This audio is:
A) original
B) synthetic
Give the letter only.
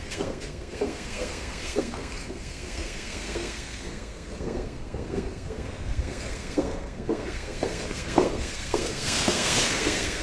B